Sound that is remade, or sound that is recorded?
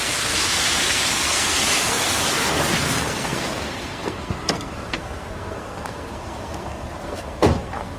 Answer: remade